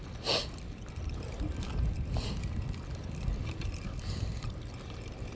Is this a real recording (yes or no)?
yes